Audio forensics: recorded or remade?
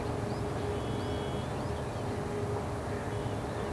recorded